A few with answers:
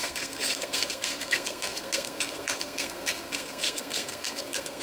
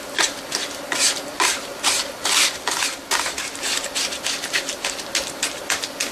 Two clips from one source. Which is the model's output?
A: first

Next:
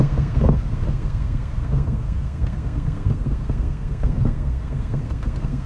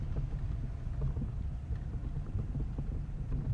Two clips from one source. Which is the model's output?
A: first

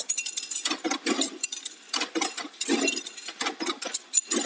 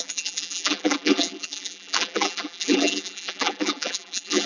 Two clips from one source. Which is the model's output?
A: second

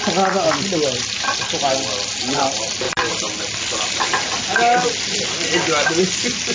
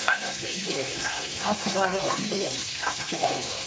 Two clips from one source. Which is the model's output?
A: second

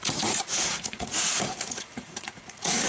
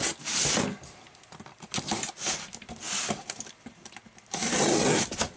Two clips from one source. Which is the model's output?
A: first